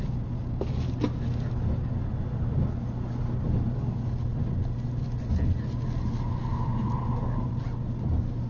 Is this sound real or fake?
real